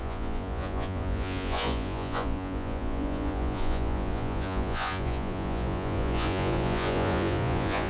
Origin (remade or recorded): remade